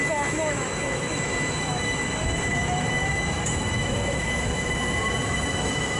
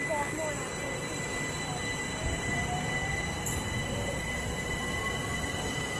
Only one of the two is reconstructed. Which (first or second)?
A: first